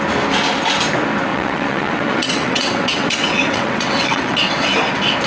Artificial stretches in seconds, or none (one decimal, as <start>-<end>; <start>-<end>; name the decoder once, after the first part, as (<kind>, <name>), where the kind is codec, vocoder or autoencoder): 1.3-4.5 (vocoder, WaveNeXt)